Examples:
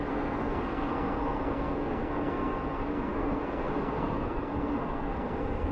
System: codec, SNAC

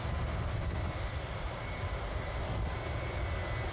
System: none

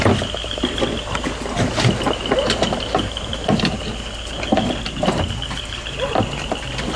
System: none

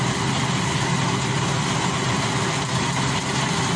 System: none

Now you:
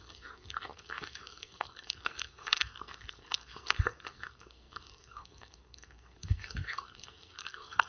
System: codec, SNAC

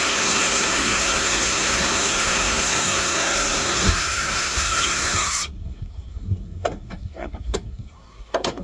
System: codec, SNAC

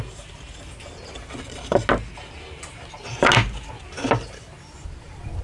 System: none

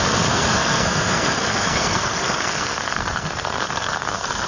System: codec, SNAC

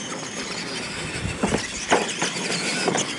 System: none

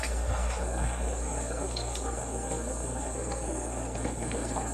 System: codec, SNAC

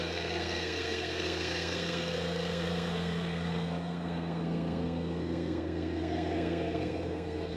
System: codec, SNAC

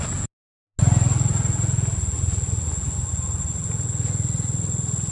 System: none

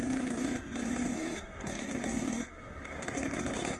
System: codec, SNAC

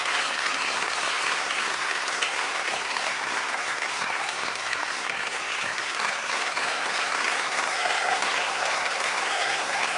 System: codec, SNAC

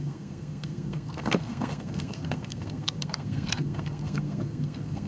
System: codec, SNAC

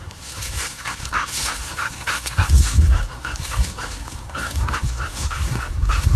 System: codec, SNAC